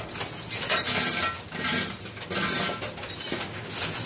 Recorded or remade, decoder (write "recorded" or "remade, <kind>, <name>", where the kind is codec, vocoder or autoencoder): recorded